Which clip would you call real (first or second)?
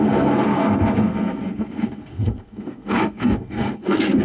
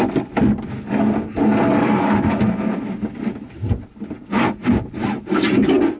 second